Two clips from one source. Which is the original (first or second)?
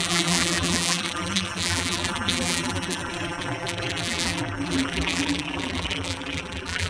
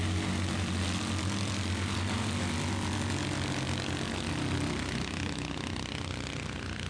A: second